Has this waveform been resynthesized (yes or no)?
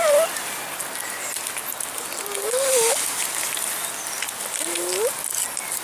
no